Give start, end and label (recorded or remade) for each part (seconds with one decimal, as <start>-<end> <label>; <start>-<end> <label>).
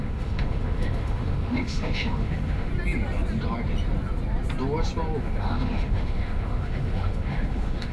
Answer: 0.0-2.7 remade; 2.7-5.2 recorded; 5.2-7.9 remade